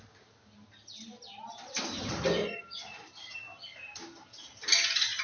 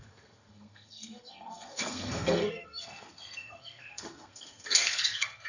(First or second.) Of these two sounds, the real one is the first